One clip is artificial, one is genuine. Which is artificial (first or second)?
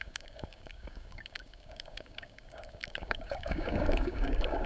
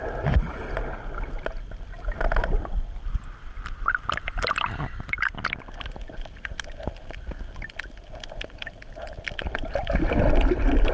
first